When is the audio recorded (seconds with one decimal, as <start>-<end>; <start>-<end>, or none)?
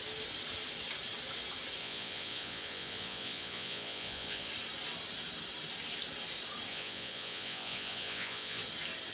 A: 0.0-1.8; 4.5-6.7; 8.6-9.1